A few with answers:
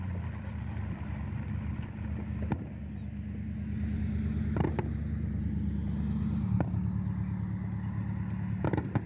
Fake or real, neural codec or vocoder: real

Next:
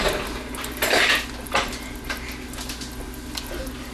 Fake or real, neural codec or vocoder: real